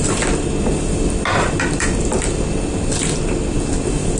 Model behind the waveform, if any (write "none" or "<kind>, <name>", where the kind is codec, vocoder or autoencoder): none